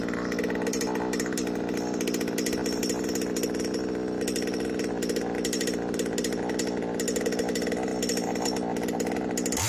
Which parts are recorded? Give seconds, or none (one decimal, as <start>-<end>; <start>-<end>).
0.0-9.7